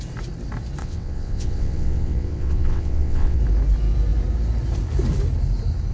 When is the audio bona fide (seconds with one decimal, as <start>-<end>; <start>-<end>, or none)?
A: 0.0-0.8; 3.4-5.9